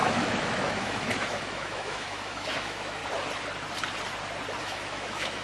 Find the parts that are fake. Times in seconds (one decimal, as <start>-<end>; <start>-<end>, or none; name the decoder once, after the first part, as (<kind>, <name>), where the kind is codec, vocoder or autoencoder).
0.0-3.0 (autoencoder, DAC-VAE); 4.6-5.4